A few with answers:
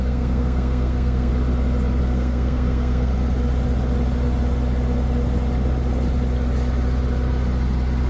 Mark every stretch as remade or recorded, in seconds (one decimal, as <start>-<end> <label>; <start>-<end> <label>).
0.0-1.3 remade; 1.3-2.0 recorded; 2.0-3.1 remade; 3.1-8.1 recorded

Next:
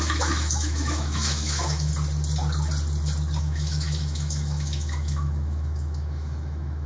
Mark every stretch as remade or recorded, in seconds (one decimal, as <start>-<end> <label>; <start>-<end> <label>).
0.0-1.9 remade; 1.9-3.4 recorded; 3.4-6.9 remade

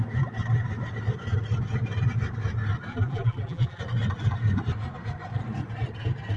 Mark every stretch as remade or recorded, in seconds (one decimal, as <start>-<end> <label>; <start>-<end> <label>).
0.0-2.9 recorded; 2.9-3.8 remade; 3.8-6.4 recorded